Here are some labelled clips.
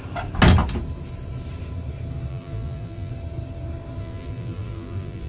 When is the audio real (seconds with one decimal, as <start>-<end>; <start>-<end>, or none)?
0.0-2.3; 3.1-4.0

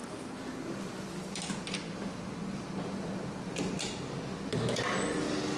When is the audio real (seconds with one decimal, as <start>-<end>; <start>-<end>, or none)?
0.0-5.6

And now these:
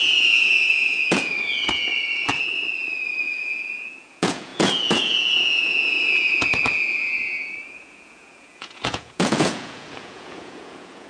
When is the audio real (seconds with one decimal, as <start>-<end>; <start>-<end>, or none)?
1.9-3.2